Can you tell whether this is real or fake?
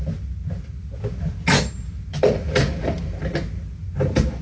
real